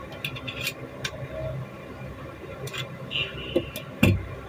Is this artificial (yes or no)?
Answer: no